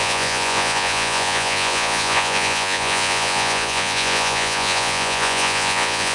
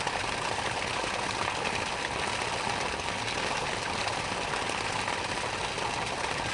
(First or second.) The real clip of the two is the second